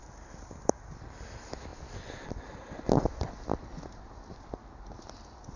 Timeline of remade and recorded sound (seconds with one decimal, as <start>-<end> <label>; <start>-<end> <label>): 0.0-0.9 remade; 0.9-5.6 recorded